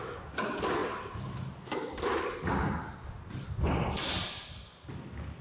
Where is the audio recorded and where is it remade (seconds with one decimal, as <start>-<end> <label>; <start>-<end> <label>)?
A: 0.0-5.4 recorded